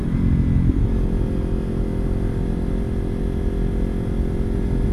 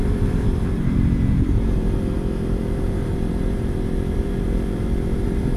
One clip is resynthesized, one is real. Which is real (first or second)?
first